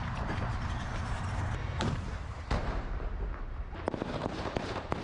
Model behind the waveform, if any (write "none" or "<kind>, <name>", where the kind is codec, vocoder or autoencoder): vocoder, BigVGAN v2